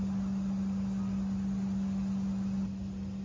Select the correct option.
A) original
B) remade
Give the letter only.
A